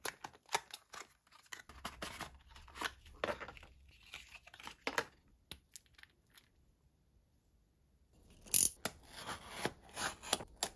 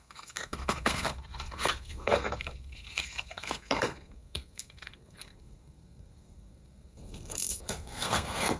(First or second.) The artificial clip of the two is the second